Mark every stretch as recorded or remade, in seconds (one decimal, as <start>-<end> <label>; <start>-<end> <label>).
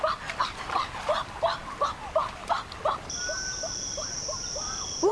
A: 0.0-5.1 recorded